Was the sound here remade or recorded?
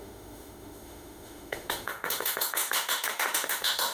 remade